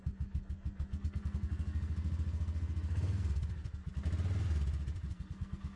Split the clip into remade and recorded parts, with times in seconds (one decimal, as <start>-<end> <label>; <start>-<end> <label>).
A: 0.0-3.8 remade; 3.8-5.1 recorded; 5.1-5.8 remade